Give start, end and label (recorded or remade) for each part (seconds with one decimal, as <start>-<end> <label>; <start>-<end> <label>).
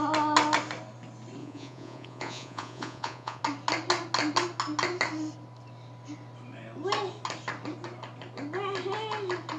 0.0-1.4 recorded; 1.4-3.4 remade; 3.4-9.6 recorded